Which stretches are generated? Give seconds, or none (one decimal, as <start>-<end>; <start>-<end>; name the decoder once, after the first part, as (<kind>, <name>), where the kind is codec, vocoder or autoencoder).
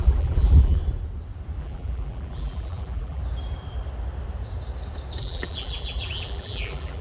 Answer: 0.0-0.8 (vocoder, BigVGAN v2); 1.6-3.2; 5.2-7.0